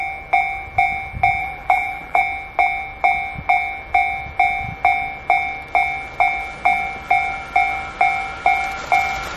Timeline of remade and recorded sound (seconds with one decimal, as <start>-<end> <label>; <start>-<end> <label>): 0.0-1.4 recorded; 1.4-2.2 remade; 2.2-9.4 recorded